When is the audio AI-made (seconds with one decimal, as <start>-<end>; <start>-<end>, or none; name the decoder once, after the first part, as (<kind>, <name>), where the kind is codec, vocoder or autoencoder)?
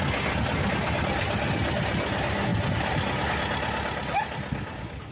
none